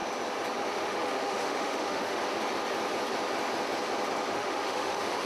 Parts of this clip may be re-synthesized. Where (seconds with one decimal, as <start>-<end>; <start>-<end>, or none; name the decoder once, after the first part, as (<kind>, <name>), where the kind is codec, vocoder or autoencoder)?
0.7-2.2 (autoencoder, DAC-VAE); 4.3-5.3